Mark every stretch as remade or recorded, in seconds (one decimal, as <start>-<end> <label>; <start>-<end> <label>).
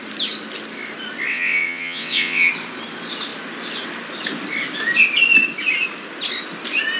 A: 0.0-1.3 recorded; 1.3-2.5 remade; 2.5-7.0 recorded